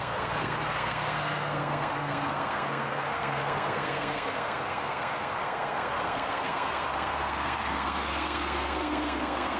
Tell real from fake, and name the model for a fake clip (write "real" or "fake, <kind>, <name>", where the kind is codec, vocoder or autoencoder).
fake, codec, SNAC